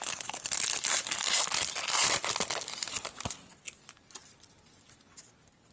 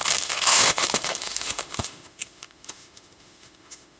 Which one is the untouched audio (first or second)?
first